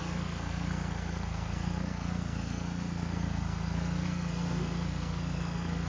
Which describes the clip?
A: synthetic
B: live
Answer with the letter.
A